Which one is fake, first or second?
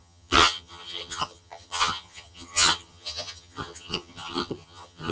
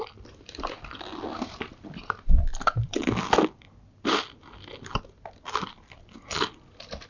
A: first